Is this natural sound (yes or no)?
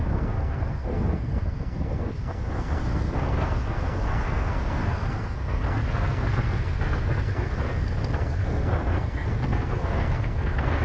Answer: no